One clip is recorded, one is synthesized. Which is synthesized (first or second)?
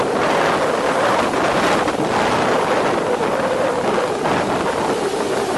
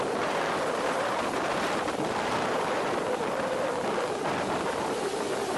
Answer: second